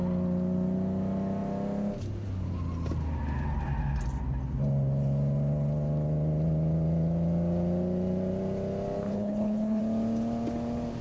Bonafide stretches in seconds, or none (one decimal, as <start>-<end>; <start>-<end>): 0.0-9.1; 9.8-11.0